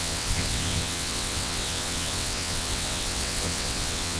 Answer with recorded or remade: remade